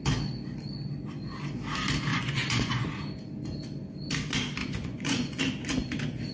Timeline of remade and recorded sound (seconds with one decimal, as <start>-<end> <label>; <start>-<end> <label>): 0.0-2.1 recorded; 2.1-2.9 remade; 2.9-4.6 recorded; 4.6-5.4 remade; 5.4-6.3 recorded